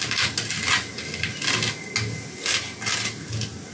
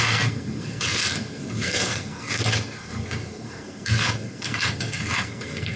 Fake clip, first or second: second